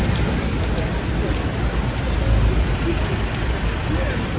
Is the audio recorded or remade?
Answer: recorded